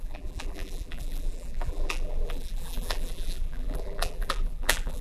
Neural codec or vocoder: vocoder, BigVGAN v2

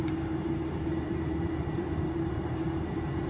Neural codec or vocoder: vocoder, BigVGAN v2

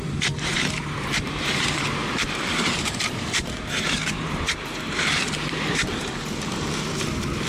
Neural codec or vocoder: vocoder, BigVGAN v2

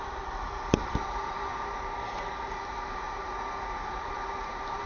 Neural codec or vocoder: vocoder, BigVGAN v2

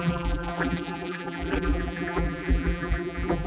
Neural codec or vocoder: vocoder, BigVGAN v2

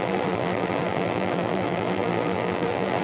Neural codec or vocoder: vocoder, BigVGAN v2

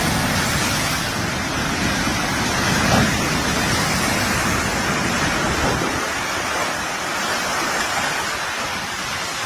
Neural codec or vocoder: none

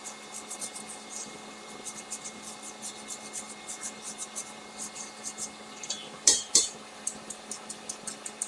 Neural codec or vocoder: vocoder, BigVGAN v2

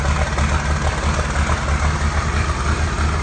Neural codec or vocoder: none